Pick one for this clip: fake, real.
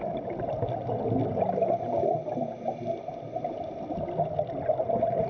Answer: real